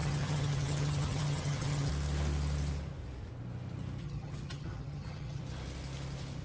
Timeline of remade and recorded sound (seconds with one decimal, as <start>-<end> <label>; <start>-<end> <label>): 0.0-1.9 remade; 1.9-4.0 recorded; 4.0-5.4 remade; 5.4-6.4 recorded